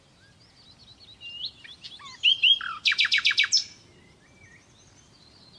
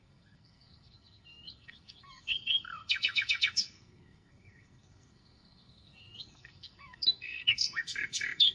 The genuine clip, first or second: first